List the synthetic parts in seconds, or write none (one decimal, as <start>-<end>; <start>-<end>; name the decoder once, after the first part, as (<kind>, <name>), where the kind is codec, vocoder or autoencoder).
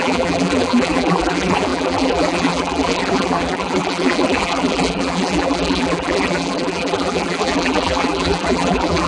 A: 0.0-9.1 (vocoder, BigVGAN v2)